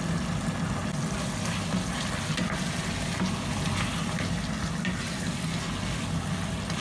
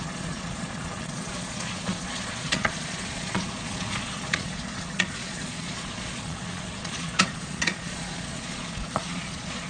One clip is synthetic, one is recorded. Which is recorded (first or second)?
first